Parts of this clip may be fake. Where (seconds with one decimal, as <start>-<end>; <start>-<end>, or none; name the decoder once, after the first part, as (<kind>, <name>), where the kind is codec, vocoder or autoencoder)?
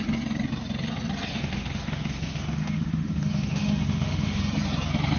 1.3-4.4 (autoencoder, DAC-VAE)